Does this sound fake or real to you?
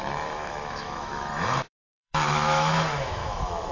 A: fake